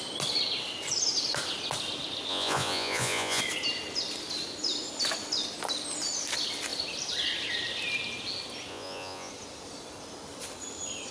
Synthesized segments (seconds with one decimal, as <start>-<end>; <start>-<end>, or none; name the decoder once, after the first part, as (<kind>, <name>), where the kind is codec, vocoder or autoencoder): 2.3-3.4 (vocoder, Vocos); 8.7-9.3